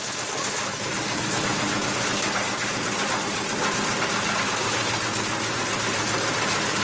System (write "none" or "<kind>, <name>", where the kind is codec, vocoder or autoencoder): none